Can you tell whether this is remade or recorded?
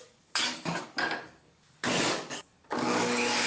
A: remade